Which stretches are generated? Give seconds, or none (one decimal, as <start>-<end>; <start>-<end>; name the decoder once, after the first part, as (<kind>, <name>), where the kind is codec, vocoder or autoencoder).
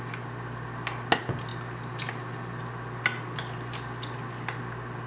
none